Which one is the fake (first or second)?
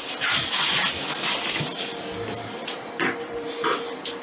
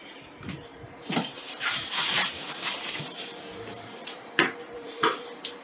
second